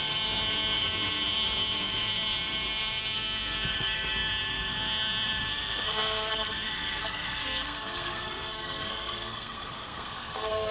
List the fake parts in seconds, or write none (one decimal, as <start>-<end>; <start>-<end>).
0.0-10.7